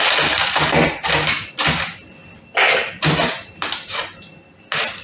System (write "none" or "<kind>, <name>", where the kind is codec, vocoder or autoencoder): none